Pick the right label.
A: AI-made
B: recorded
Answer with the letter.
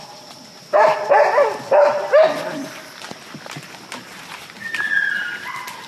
B